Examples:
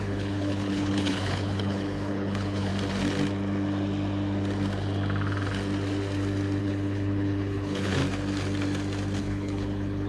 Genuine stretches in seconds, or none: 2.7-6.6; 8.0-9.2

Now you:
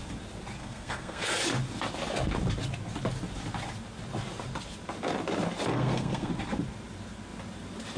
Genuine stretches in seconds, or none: 0.0-0.6; 1.3-5.7; 6.3-8.0